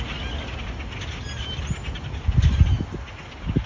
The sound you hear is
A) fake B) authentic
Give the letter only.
B